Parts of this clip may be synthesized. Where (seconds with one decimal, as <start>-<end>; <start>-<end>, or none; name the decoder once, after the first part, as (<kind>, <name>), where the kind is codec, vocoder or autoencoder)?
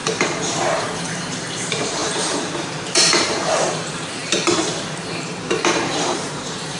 0.0-6.8 (vocoder, BigVGAN v2)